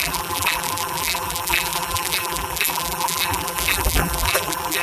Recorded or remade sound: remade